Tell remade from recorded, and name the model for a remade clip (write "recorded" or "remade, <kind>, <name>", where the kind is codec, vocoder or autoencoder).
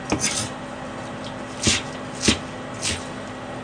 recorded